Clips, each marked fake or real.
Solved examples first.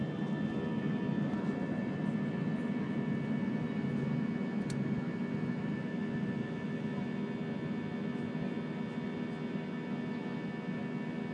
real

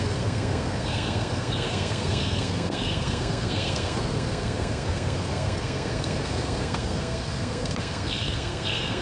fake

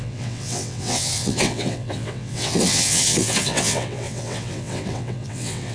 fake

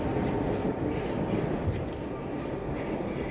real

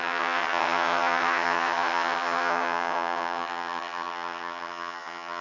fake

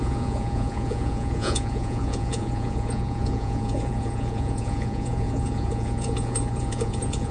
fake